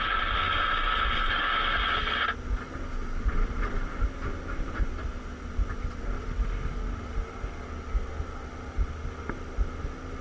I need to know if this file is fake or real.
real